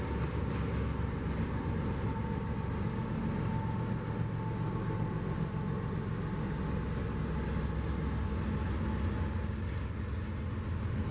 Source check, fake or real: real